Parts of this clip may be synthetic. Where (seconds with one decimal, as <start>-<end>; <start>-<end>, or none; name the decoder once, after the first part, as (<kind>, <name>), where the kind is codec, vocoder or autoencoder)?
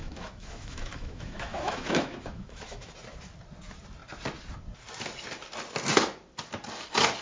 0.0-2.9 (autoencoder, DAC-VAE)